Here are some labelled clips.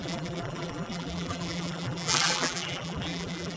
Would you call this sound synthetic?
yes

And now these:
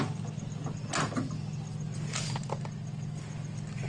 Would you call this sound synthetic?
no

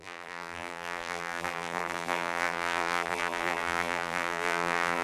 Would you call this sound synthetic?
yes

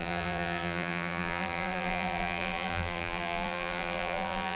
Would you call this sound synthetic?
yes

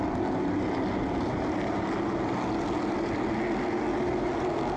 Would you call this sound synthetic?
no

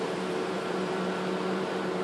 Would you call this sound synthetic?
yes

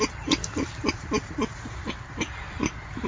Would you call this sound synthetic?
no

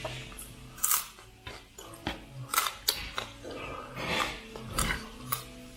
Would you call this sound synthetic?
no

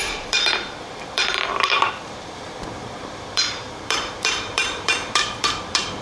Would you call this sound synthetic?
yes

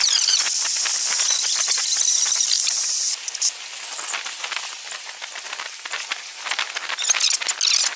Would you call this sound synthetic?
no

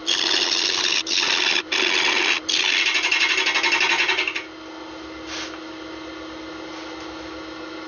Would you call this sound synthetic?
no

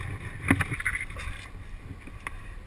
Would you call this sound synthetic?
no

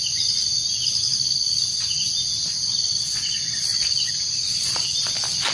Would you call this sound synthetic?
no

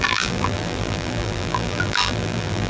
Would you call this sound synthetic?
yes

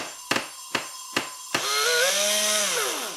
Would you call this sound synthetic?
no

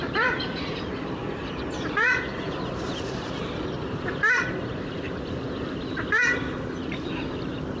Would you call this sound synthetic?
yes